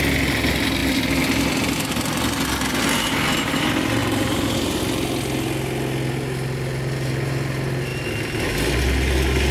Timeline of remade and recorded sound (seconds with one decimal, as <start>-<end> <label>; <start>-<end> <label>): 0.0-4.0 recorded; 4.0-4.8 remade; 4.8-9.5 recorded